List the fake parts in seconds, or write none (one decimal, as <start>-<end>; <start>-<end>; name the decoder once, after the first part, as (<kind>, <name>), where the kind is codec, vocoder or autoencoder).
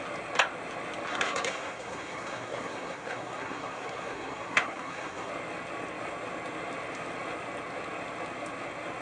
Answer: 1.1-5.3 (codec, SNAC)